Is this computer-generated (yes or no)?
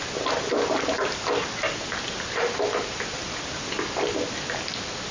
no